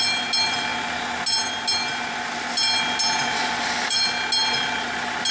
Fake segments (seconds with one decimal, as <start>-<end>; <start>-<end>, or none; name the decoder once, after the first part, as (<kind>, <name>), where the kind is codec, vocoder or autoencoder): none